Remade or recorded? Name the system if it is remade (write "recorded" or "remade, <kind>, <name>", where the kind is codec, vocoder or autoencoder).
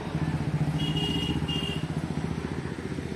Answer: recorded